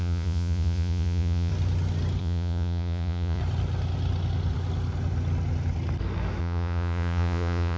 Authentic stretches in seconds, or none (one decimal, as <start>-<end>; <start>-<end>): 1.5-2.2; 3.4-6.4